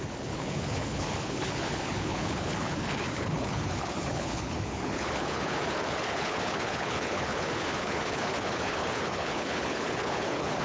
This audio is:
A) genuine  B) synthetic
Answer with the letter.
B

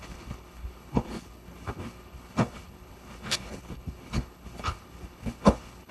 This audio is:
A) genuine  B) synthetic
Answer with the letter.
B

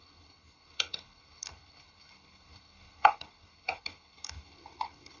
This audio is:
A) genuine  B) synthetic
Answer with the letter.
B